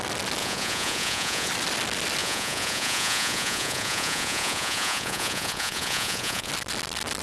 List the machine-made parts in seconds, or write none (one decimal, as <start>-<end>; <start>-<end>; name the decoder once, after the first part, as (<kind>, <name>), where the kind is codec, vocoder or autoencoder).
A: 0.4-1.5 (vocoder, Vocos); 2.2-6.5